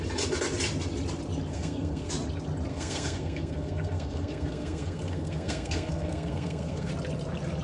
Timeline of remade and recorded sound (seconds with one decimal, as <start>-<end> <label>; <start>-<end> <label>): 0.0-1.5 recorded; 1.5-2.1 remade; 2.1-2.7 recorded; 2.7-6.9 remade; 6.9-7.6 recorded